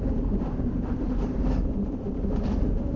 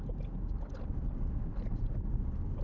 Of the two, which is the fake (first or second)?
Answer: first